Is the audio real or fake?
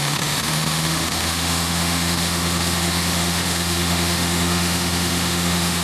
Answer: fake